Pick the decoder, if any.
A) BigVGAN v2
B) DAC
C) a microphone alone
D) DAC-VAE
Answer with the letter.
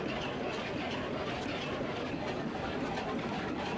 C